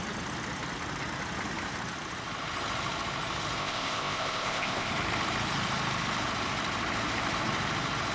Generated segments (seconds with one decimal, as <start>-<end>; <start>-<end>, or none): 3.6-4.9